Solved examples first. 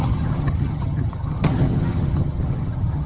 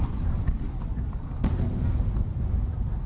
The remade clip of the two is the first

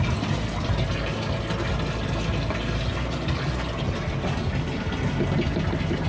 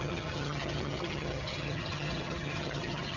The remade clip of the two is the second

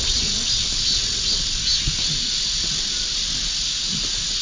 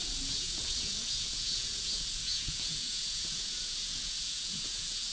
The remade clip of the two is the second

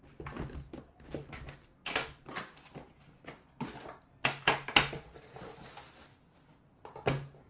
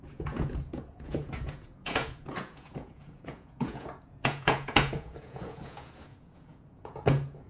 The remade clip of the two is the second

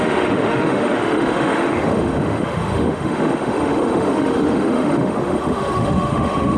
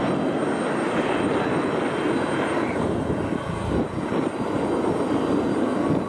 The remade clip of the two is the first